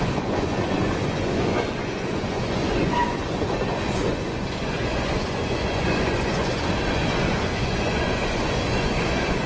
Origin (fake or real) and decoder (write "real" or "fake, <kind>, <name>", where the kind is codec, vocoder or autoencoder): fake, vocoder, Vocos